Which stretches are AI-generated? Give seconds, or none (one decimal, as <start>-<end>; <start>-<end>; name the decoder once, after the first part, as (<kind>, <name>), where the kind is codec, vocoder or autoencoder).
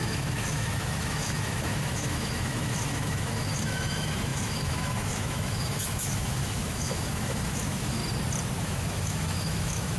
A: 0.0-8.0 (autoencoder, DAC-VAE); 8.6-10.0